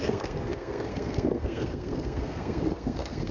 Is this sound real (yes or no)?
no